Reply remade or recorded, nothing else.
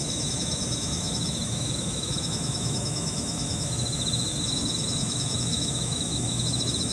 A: remade